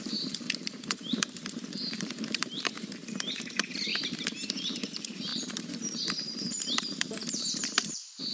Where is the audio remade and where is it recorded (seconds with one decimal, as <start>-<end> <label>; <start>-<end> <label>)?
0.0-1.4 remade; 1.4-1.9 recorded; 1.9-8.3 remade